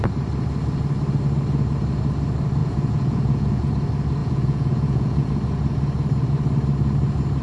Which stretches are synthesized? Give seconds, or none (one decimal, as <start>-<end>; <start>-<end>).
2.6-3.7; 4.2-5.3